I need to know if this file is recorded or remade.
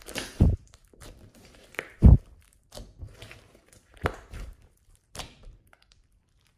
remade